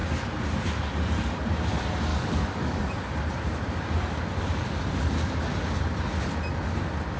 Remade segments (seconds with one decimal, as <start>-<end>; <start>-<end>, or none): 2.1-2.8

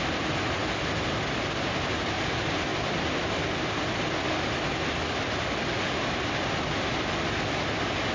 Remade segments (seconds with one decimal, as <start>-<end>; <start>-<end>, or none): none

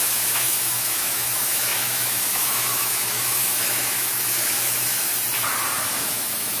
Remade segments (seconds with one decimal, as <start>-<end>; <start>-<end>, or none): 0.0-5.1; 5.8-6.6

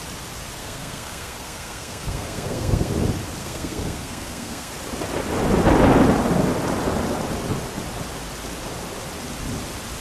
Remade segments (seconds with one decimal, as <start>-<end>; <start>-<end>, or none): 0.6-2.9; 3.4-4.7

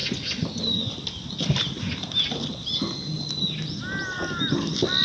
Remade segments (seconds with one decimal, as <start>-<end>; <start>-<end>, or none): 0.0-1.3; 4.5-5.0

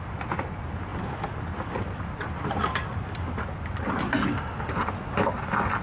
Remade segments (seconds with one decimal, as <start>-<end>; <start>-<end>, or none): none

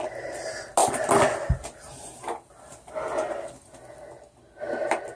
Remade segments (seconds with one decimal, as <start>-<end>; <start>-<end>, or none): none

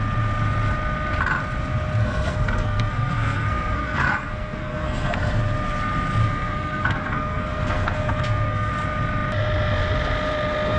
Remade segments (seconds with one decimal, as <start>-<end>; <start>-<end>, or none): 2.0-5.4; 6.2-8.7